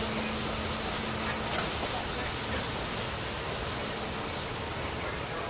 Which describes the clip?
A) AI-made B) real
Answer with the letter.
B